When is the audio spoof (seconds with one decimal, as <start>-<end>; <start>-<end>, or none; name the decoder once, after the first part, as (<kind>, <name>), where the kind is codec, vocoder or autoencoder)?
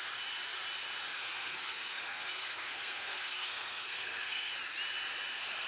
1.1-4.5 (codec, SNAC)